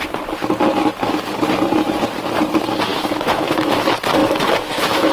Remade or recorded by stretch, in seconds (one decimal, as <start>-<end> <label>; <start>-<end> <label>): 0.0-2.9 recorded; 2.9-3.7 remade; 3.7-4.2 recorded; 4.2-5.1 remade